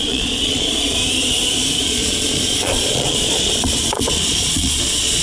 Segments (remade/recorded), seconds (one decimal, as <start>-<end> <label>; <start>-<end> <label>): 0.0-1.0 remade; 1.0-1.8 recorded; 1.8-5.2 remade